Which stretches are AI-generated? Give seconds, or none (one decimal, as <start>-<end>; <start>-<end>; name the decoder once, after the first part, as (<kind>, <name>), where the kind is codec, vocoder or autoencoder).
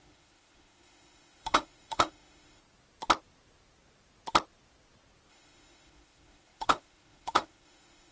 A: 0.0-2.6 (autoencoder, DAC-VAE); 5.3-8.1